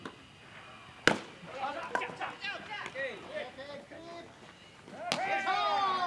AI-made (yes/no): no